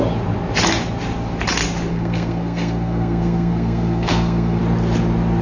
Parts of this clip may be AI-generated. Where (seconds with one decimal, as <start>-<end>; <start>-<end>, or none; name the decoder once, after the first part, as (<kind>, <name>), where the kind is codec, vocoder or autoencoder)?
1.9-4.6 (codec, SNAC)